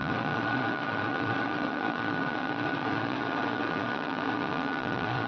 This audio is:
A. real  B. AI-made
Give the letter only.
B